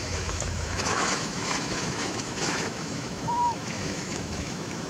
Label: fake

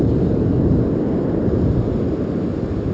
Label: real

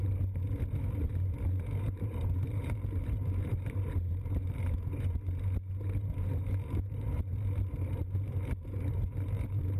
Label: fake